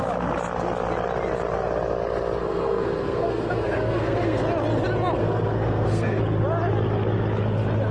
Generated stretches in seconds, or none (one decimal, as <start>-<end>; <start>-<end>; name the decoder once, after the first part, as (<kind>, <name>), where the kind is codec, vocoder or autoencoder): 2.4-4.4 (codec, SNAC); 5.2-6.2